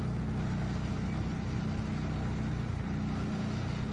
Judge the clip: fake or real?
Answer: real